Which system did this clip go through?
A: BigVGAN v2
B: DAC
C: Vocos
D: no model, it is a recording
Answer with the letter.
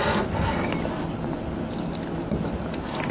D